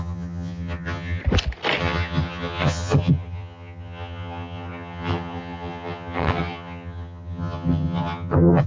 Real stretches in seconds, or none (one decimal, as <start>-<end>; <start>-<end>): 1.2-1.8